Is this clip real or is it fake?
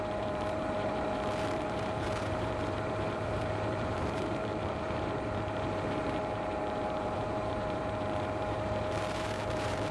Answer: fake